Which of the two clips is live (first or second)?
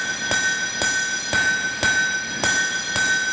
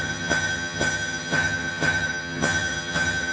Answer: first